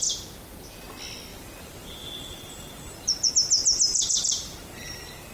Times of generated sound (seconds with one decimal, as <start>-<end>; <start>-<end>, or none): 1.3-3.3; 3.9-5.3